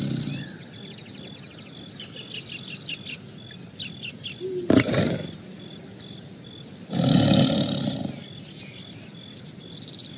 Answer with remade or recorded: recorded